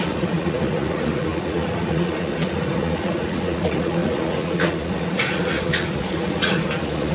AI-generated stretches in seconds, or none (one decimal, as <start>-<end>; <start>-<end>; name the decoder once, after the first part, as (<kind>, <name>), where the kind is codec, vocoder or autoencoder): 0.0-7.1 (vocoder, Vocos)